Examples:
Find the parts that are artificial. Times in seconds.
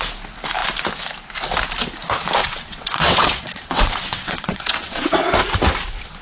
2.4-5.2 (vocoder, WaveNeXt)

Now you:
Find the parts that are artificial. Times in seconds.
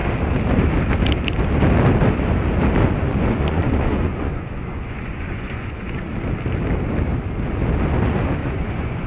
3.1-6.1 (vocoder, Vocos); 8.4-9.1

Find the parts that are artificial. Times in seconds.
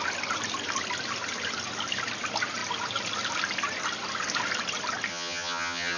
5.1-6.0 (vocoder, HiFi-GAN)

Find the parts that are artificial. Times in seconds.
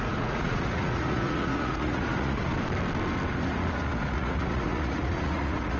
0.0-2.5 (vocoder, Vocos); 3.3-5.8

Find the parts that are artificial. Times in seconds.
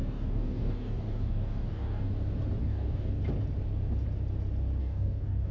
0.0-2.1 (codec, DAC); 2.6-3.2; 4.8-5.5